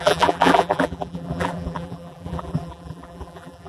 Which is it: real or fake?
fake